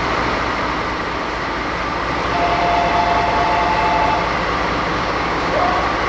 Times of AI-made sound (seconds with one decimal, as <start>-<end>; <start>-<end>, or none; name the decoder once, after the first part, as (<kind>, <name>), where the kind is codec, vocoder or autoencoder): 4.9-5.5 (codec, DAC)